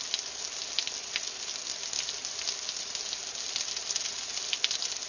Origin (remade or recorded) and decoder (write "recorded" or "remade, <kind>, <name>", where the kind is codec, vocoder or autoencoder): recorded